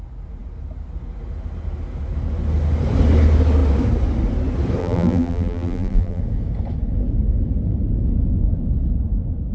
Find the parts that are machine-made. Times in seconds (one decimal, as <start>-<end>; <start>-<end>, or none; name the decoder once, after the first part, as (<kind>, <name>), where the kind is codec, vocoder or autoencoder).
4.8-6.2 (vocoder, BigVGAN v2)